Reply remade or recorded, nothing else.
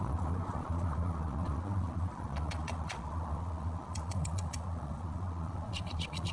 remade